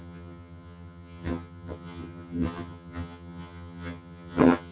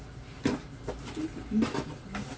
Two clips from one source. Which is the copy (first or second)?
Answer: first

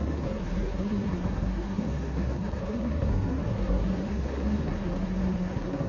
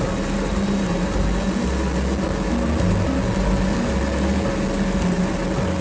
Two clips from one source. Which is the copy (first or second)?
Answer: first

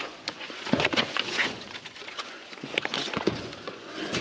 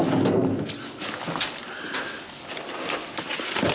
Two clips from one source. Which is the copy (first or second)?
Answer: first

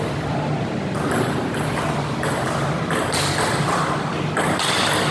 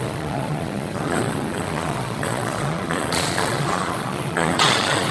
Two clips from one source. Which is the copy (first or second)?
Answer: second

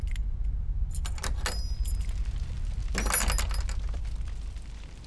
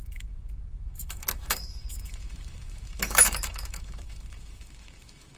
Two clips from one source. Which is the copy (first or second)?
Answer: second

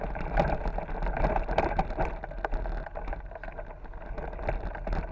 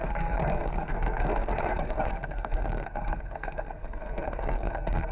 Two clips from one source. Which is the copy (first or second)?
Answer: second